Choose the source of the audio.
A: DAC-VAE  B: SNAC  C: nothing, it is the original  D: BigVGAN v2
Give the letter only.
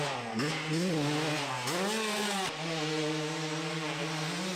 C